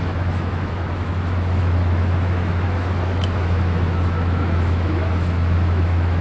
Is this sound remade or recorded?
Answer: remade